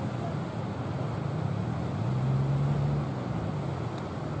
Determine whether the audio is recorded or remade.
recorded